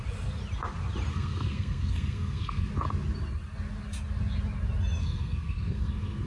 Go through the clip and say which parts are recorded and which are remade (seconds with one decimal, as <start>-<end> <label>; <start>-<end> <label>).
0.0-1.1 recorded; 1.1-2.7 remade; 2.7-5.0 recorded; 5.0-6.3 remade